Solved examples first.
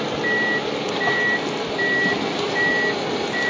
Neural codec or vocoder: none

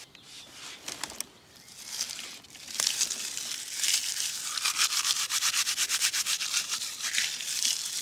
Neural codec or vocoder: none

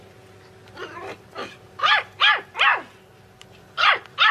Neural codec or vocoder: none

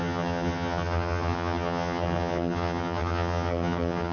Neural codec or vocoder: vocoder, HiFi-GAN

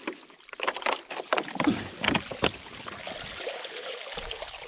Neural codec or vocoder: none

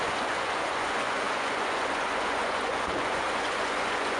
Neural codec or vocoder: vocoder, Vocos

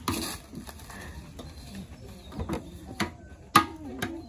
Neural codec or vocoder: none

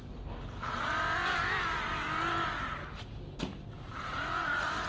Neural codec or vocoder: none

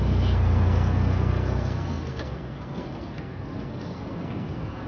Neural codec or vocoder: codec, SNAC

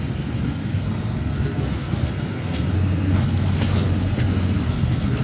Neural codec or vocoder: codec, SNAC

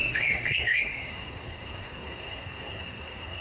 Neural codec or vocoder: codec, SNAC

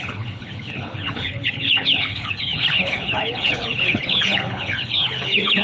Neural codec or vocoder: codec, HILCodec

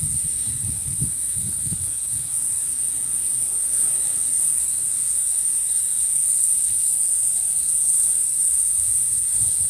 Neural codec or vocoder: codec, SNAC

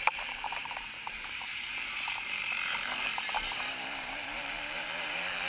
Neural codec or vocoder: vocoder, BigVGAN v2